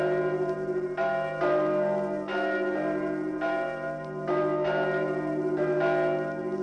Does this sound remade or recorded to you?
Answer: recorded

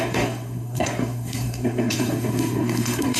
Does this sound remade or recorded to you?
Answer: remade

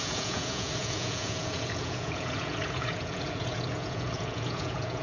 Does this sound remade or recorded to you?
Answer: remade